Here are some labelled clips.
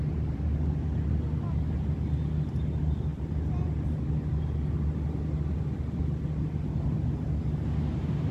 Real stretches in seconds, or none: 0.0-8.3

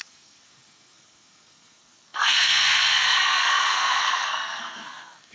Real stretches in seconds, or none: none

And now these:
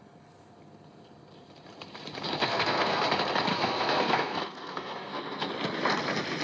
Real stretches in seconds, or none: 0.0-2.4; 3.1-3.5; 5.5-6.4

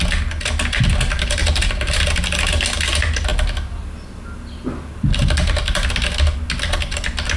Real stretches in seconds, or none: 0.0-7.4

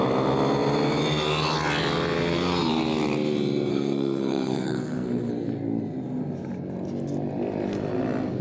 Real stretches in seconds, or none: 0.0-3.7; 5.3-8.4

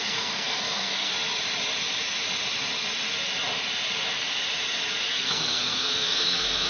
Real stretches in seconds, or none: 1.1-5.1